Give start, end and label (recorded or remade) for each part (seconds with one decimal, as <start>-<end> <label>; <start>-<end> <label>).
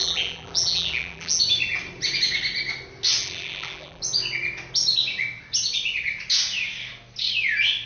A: 0.0-1.4 remade; 1.4-3.2 recorded; 3.2-4.0 remade; 4.0-7.9 recorded